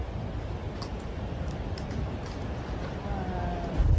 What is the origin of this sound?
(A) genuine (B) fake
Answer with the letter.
A